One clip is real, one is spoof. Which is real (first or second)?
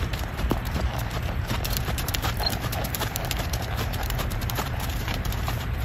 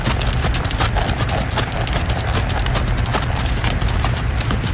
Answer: second